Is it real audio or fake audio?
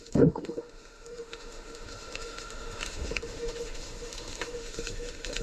fake